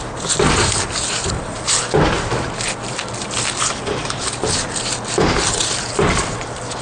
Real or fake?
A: real